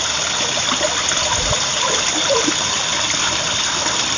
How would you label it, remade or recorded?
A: recorded